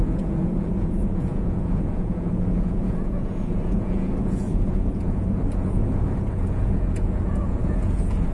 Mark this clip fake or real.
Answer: fake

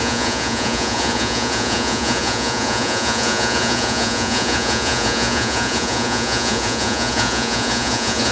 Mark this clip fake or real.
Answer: fake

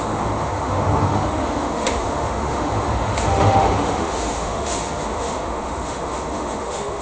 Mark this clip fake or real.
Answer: fake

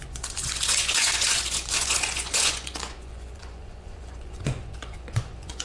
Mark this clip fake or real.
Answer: fake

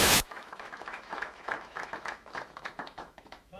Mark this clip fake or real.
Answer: fake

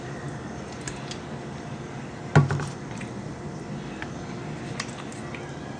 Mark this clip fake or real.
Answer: real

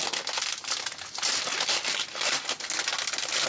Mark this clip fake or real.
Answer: real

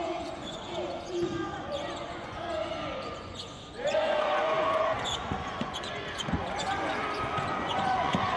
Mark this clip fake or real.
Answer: fake